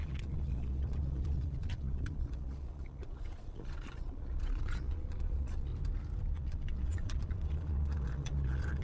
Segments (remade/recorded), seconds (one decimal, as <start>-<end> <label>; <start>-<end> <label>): 0.0-5.7 remade; 5.7-6.3 recorded; 6.3-8.8 remade